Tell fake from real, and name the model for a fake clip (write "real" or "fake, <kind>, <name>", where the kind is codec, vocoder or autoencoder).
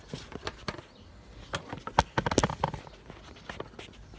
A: real